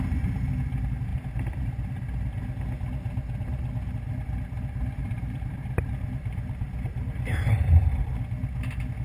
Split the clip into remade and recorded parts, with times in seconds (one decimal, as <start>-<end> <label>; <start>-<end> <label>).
0.0-5.0 recorded; 5.0-5.8 remade; 5.8-6.2 recorded; 6.2-8.1 remade; 8.1-9.0 recorded